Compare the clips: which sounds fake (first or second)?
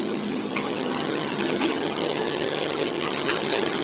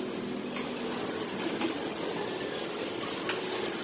first